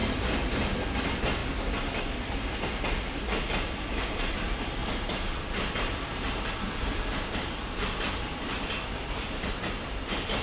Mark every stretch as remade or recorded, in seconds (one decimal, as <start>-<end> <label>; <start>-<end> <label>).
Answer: 0.0-0.8 remade; 0.8-4.8 recorded; 4.8-9.6 remade; 9.6-10.4 recorded